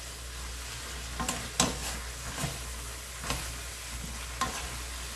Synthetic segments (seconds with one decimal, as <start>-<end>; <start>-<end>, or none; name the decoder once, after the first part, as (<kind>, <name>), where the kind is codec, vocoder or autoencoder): none